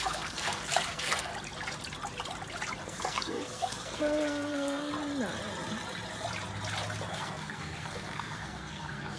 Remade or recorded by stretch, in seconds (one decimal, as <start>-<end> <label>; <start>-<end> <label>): 0.0-1.3 remade; 1.3-2.8 recorded; 2.8-4.9 remade; 4.9-7.1 recorded; 7.1-9.2 remade